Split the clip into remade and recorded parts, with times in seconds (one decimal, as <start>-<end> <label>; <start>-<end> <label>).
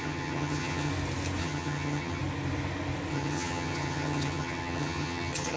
0.0-0.9 remade; 0.9-1.4 recorded; 1.4-2.2 remade; 2.2-3.1 recorded; 3.1-5.6 remade